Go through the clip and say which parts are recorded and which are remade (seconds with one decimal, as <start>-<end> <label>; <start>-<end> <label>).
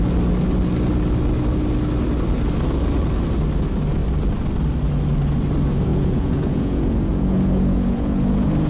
0.0-5.9 recorded; 5.9-8.7 remade